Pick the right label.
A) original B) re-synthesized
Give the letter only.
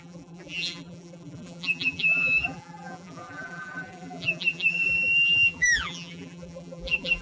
B